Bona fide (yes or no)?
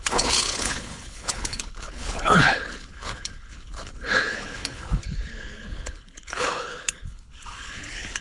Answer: no